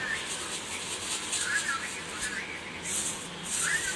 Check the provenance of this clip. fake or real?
real